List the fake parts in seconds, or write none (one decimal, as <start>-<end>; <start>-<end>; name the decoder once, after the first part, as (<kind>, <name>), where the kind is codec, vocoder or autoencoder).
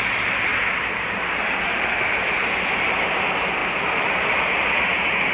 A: none